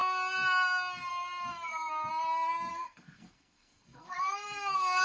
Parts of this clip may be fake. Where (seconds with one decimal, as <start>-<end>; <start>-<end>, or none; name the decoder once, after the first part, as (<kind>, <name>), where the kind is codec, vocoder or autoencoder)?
1.5-2.1 (codec, SNAC); 2.7-5.0

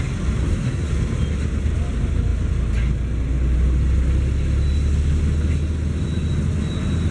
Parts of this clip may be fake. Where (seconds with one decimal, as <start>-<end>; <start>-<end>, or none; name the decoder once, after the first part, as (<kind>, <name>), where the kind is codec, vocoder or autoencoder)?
0.4-0.9 (codec, SNAC)